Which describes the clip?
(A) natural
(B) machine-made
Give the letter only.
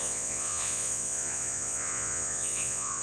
B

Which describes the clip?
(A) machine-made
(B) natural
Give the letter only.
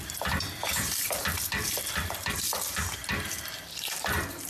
A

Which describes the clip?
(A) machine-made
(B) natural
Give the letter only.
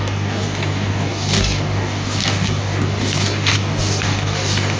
A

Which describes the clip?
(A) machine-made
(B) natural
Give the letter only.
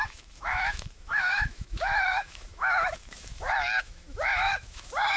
A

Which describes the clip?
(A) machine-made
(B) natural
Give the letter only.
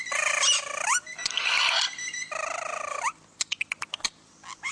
B